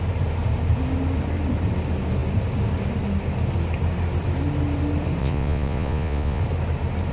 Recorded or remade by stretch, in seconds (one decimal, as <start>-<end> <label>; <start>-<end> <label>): 0.0-5.2 recorded; 5.2-6.4 remade; 6.4-7.1 recorded